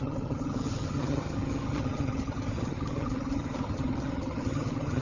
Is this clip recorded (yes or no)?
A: no